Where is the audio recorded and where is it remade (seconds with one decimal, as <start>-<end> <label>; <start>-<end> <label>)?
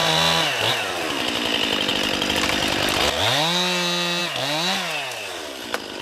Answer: 0.0-6.0 recorded